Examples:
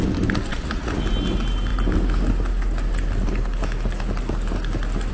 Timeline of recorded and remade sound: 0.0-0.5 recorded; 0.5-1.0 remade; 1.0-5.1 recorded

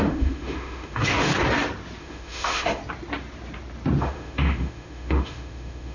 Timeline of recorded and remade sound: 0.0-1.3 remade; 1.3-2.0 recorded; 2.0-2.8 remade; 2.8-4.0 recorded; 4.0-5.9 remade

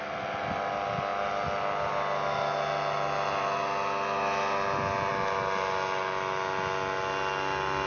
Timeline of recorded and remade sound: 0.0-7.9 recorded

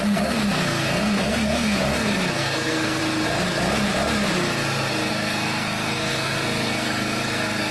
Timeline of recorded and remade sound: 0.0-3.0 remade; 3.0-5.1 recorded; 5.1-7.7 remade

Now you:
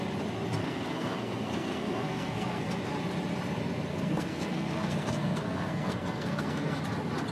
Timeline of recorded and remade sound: 0.0-0.6 recorded; 0.6-2.7 remade; 2.7-3.9 recorded; 3.9-6.8 remade; 6.8-7.3 recorded

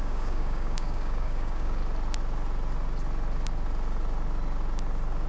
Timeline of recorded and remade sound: 0.0-1.8 remade; 1.8-5.3 recorded